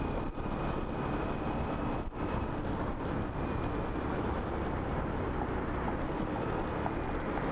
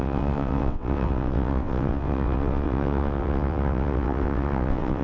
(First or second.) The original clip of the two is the first